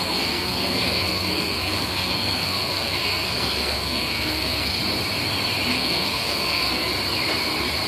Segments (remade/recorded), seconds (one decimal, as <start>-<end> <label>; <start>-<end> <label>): 0.0-4.8 remade; 4.8-5.7 recorded; 5.7-6.9 remade; 6.9-7.9 recorded